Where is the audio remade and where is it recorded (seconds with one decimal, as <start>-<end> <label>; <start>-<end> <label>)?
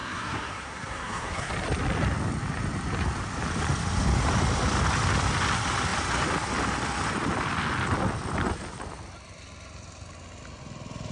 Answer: 0.0-1.5 remade; 1.5-11.1 recorded